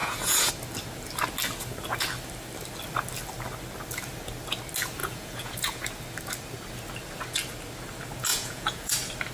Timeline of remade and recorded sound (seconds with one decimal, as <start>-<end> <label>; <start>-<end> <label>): 0.0-0.5 remade; 0.5-5.0 recorded; 5.0-5.8 remade; 5.8-8.3 recorded; 8.3-8.9 remade; 8.9-9.3 recorded